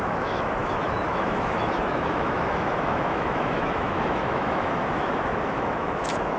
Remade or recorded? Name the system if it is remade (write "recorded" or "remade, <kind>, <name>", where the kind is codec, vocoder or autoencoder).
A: remade, autoencoder, DAC-VAE